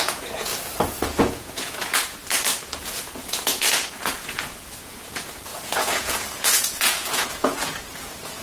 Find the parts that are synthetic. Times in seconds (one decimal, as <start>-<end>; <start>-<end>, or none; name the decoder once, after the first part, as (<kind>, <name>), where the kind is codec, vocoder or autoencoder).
0.0-0.5 (vocoder, Vocos); 1.2-2.2; 2.8-8.4